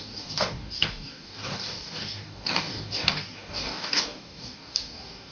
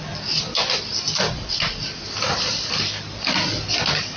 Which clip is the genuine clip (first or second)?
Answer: second